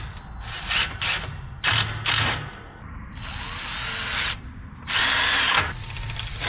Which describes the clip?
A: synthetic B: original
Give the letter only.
B